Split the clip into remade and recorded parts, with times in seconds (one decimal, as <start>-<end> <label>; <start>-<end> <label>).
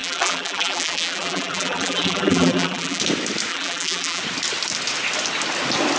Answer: 0.0-3.0 remade; 3.0-3.5 recorded; 3.5-4.2 remade; 4.2-6.0 recorded